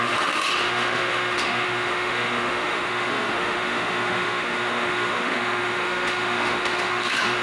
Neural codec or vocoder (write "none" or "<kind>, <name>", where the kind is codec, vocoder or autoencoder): autoencoder, DAC-VAE